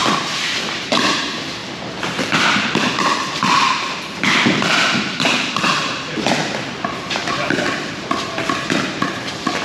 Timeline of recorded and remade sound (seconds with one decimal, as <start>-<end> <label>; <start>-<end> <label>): 0.0-0.8 recorded; 0.8-7.2 remade; 7.2-7.8 recorded; 7.8-9.6 remade